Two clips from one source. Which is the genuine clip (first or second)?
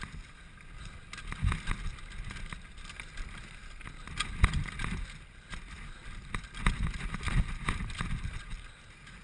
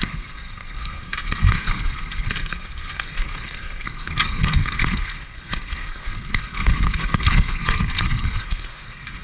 first